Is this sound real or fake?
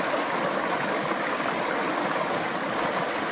real